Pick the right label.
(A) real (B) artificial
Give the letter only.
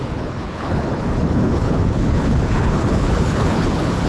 B